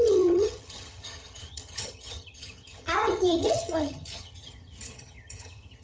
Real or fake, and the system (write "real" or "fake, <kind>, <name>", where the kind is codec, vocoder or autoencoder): fake, vocoder, HiFi-GAN